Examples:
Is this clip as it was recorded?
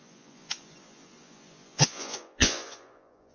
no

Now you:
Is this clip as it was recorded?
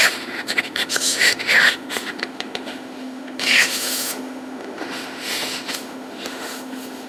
no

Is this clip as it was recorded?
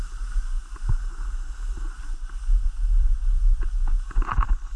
yes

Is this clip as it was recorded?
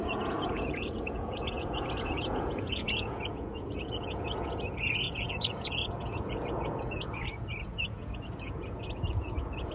no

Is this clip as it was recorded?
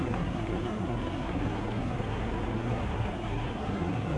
no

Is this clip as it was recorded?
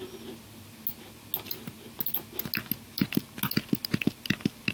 yes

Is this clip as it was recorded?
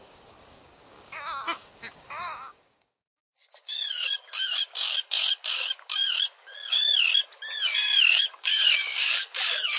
no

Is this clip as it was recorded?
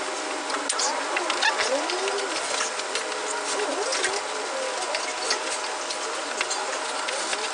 yes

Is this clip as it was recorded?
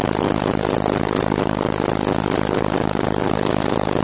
yes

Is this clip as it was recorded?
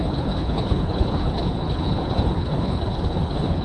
no